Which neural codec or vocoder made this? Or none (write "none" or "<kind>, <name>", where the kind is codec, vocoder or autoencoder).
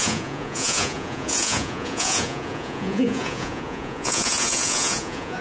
vocoder, Vocos